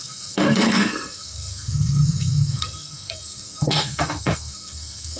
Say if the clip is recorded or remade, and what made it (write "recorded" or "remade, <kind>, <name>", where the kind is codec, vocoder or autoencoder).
remade, codec, SNAC